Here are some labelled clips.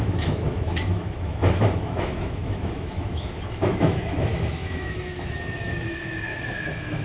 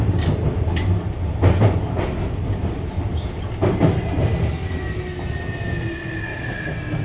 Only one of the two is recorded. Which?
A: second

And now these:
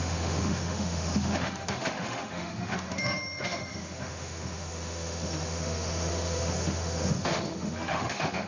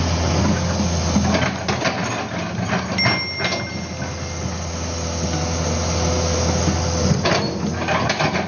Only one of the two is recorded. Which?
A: second